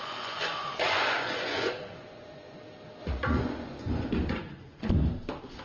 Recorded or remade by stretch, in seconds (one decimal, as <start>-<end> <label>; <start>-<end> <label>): 0.0-2.6 remade; 2.6-3.0 recorded; 3.0-4.9 remade; 4.9-5.6 recorded